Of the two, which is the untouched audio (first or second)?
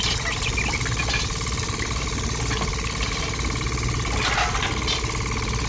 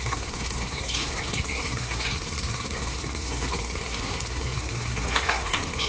first